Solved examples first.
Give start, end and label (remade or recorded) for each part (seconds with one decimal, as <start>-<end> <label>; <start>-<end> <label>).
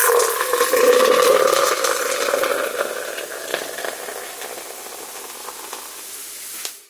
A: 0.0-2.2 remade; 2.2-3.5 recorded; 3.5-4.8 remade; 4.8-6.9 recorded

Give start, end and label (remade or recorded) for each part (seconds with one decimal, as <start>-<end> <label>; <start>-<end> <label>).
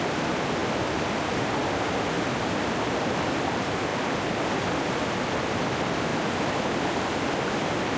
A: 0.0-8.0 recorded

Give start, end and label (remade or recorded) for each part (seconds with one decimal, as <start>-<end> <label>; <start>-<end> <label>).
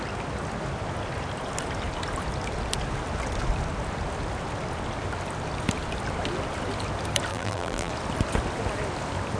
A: 0.0-7.3 recorded; 7.3-7.9 remade; 7.9-9.4 recorded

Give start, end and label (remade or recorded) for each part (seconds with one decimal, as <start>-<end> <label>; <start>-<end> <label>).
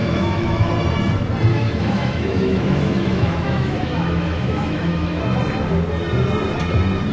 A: 0.0-0.7 remade; 0.7-1.5 recorded; 1.5-5.2 remade; 5.2-7.1 recorded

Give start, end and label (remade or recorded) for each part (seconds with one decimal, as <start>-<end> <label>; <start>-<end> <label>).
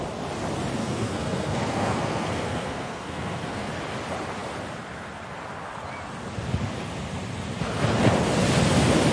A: 0.0-0.8 recorded; 0.8-3.7 remade; 3.7-9.1 recorded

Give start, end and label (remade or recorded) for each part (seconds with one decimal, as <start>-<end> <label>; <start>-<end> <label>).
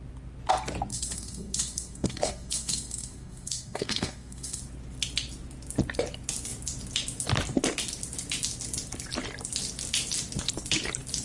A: 0.0-0.9 recorded; 0.9-4.6 remade; 4.6-11.2 recorded